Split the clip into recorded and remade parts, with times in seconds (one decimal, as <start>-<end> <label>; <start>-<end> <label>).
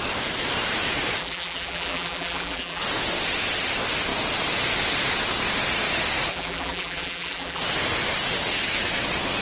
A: 0.0-1.2 recorded; 1.2-2.8 remade; 2.8-6.3 recorded; 6.3-7.6 remade; 7.6-9.4 recorded